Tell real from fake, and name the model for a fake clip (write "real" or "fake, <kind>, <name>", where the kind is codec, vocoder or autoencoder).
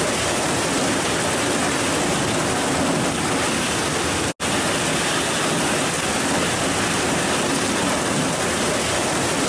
real